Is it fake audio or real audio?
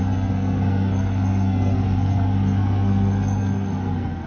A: fake